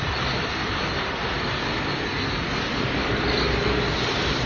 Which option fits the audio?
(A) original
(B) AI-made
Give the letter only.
A